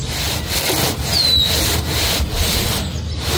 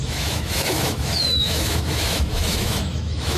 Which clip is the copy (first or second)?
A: second